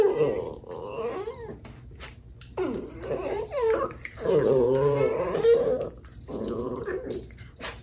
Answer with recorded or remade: remade